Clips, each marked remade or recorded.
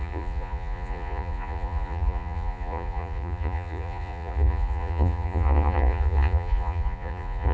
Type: remade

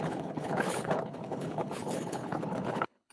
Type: remade